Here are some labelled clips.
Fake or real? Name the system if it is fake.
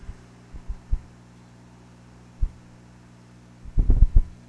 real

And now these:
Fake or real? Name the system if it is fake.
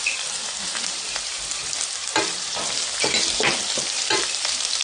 fake, vocoder, BigVGAN v2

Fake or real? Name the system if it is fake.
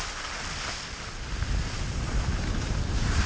real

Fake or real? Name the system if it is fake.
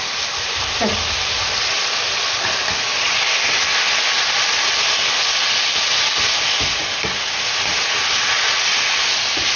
real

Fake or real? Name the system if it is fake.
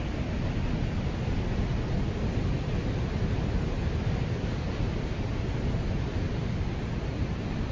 real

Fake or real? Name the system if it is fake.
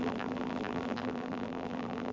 fake, vocoder, BigVGAN v2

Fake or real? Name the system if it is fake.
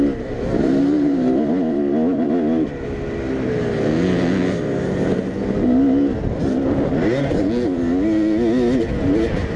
real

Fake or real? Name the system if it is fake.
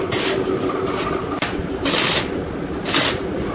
real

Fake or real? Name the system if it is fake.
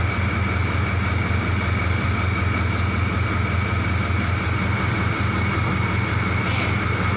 real